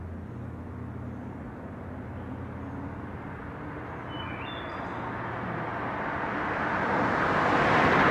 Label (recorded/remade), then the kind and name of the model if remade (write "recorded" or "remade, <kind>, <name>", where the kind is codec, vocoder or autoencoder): recorded